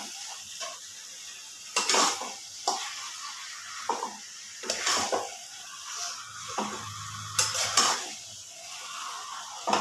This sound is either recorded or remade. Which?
recorded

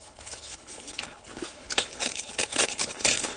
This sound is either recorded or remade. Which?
remade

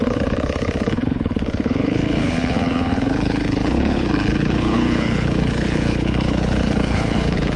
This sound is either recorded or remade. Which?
remade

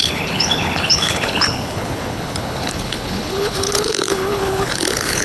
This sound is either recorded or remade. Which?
remade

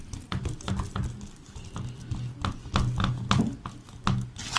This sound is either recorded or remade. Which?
recorded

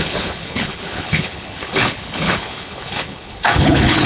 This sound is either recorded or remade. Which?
remade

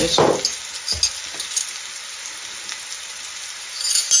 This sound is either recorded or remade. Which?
recorded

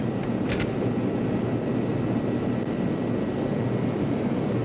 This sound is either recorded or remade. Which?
recorded